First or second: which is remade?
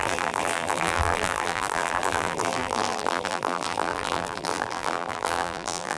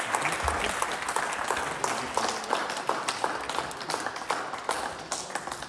first